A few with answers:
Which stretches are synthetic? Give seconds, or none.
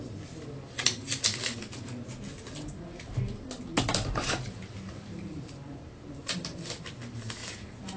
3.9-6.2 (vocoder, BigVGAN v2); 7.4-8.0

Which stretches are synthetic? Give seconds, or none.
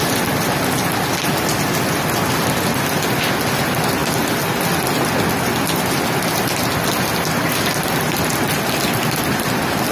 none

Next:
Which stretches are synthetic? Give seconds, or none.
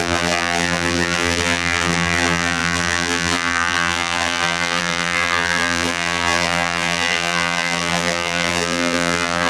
0.0-9.5 (vocoder, BigVGAN v2)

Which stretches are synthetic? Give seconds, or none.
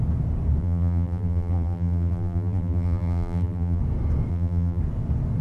0.6-3.8 (vocoder, BigVGAN v2); 4.3-4.8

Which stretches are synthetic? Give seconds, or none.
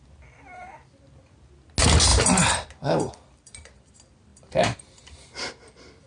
2.1-3.9 (vocoder, BigVGAN v2); 4.3-4.8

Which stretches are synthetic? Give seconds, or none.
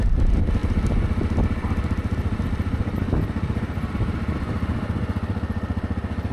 none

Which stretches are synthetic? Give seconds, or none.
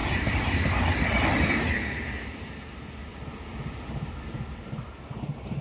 0.0-0.9 (vocoder, BigVGAN v2); 3.1-3.7